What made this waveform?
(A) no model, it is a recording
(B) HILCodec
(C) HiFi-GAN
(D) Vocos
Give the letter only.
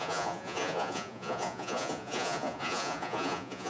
D